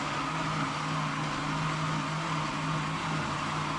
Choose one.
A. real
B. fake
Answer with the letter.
A